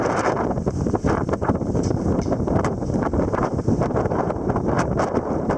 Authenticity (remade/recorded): remade